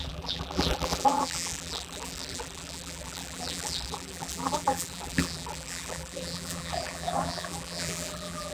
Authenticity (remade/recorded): remade